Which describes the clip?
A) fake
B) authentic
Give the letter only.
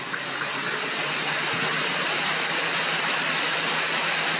B